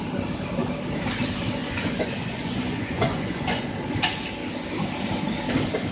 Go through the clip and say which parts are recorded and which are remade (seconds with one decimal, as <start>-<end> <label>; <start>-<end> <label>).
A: 0.0-1.6 recorded; 1.6-3.7 remade; 3.7-5.9 recorded